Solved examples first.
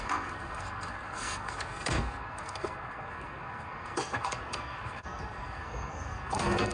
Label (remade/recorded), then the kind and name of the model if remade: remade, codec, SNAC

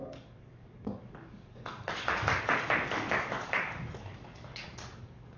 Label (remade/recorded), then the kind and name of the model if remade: remade, codec, DAC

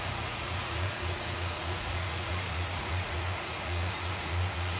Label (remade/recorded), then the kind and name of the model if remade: remade, vocoder, Vocos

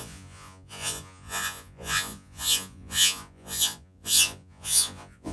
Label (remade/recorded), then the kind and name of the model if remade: remade, vocoder, Vocos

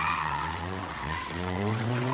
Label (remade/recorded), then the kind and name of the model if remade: remade, vocoder, WaveNeXt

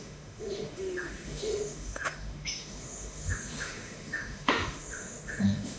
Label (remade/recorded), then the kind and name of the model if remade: remade, autoencoder, DAC-VAE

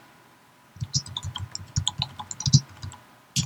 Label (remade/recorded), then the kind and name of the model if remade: recorded